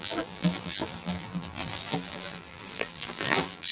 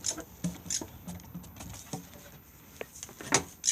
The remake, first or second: first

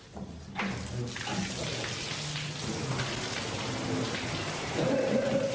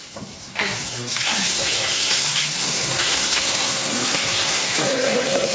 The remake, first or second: second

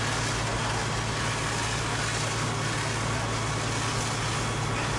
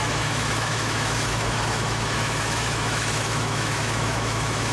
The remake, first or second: second